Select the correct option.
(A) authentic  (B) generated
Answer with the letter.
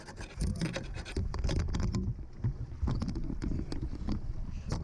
A